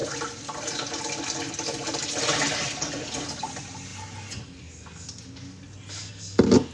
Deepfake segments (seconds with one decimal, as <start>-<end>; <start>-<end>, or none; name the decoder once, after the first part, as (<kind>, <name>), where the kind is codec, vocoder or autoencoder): none